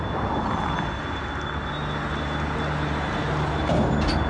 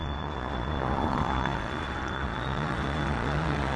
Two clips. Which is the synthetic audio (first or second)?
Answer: second